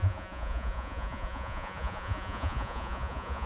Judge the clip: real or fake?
fake